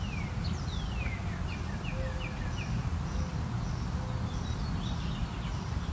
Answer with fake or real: real